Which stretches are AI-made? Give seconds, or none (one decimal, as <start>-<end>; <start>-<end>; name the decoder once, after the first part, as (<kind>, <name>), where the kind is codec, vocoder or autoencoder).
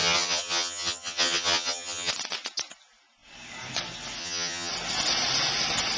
0.0-2.1 (vocoder, HiFi-GAN); 4.2-4.7